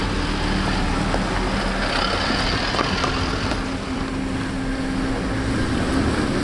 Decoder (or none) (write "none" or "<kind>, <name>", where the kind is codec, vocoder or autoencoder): none